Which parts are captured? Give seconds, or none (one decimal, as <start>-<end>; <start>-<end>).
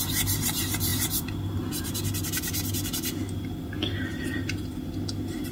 0.0-5.5